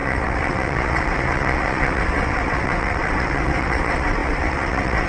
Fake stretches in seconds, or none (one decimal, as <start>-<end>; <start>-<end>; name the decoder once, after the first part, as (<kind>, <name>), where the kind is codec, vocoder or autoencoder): 0.0-5.1 (vocoder, WaveNeXt)